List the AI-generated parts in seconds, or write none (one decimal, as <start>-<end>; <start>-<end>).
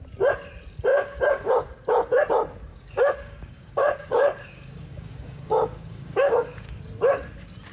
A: 0.9-1.5; 2.7-6.8